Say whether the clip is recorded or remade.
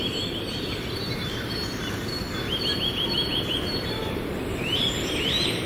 remade